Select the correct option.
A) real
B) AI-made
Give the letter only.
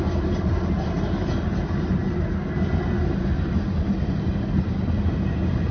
A